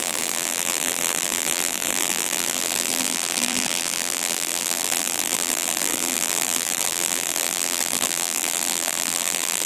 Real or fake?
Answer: fake